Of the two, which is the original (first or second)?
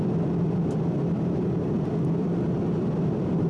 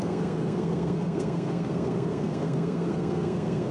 first